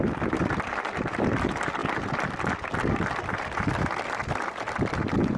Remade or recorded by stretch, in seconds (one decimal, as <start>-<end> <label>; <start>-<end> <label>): 0.0-5.4 recorded